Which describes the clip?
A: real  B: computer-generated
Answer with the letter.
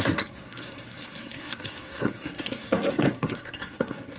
B